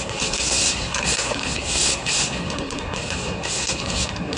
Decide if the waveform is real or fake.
fake